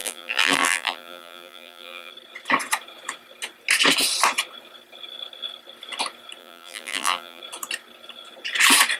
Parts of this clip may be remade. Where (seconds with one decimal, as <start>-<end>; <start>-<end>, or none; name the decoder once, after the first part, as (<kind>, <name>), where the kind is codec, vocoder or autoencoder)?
0.0-2.1 (vocoder, BigVGAN v2); 6.4-7.4